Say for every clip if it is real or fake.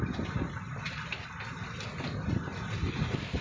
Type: real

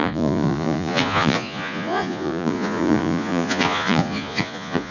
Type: fake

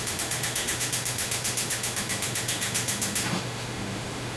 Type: fake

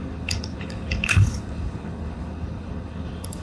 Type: fake